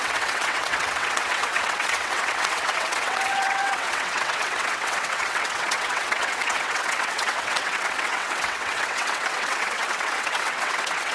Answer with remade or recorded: remade